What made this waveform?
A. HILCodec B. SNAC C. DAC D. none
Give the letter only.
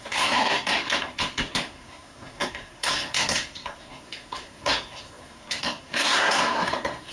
B